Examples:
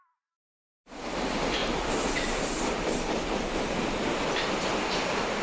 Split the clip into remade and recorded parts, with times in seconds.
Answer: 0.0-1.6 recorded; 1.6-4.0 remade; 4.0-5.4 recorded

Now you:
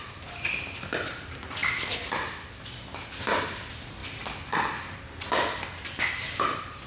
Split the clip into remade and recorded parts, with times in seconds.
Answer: 0.0-6.9 recorded

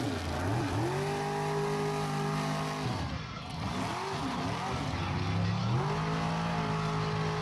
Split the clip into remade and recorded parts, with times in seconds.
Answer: 0.0-7.4 recorded

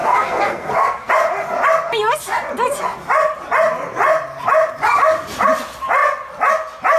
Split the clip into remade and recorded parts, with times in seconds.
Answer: 0.0-1.1 remade; 1.1-7.0 recorded

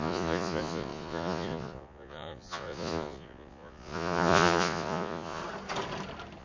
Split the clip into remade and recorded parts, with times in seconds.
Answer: 0.0-5.4 remade; 5.4-6.4 recorded

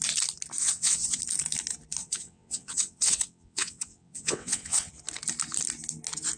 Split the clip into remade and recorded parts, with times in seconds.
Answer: 0.0-0.6 recorded; 0.6-1.2 remade; 1.2-2.0 recorded; 2.0-4.9 remade; 4.9-6.4 recorded

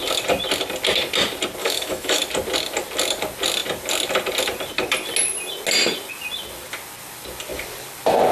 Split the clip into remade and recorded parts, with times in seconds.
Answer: 0.0-1.6 recorded; 1.6-2.2 remade; 2.2-8.3 recorded